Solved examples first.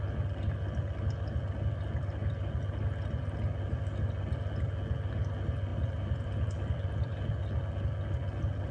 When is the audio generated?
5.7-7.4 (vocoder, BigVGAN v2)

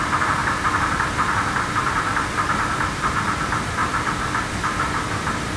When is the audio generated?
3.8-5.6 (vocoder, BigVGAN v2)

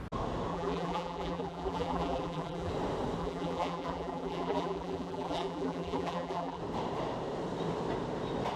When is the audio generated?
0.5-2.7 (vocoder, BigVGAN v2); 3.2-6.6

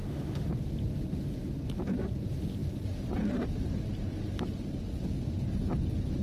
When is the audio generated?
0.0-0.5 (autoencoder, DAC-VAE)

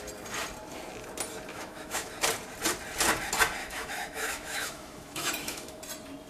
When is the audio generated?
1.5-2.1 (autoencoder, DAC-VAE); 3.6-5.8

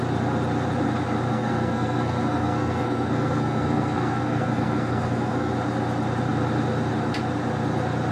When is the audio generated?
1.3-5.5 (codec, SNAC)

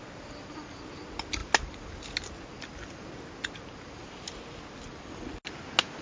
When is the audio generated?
none